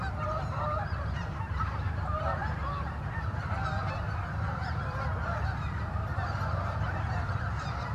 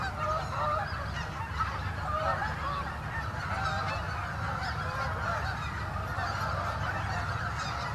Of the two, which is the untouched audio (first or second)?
second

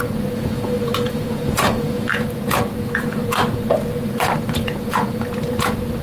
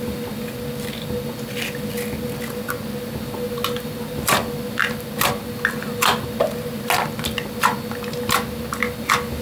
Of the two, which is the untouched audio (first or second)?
second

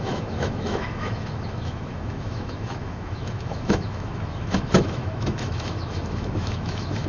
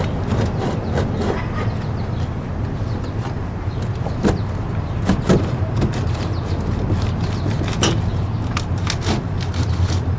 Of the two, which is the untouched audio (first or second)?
second